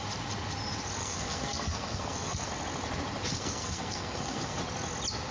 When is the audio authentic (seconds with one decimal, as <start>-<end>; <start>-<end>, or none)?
0.0-1.0; 2.5-3.3; 4.6-5.3